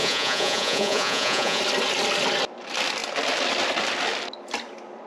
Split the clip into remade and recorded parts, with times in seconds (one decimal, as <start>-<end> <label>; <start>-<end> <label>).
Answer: 0.0-1.6 remade; 1.6-5.1 recorded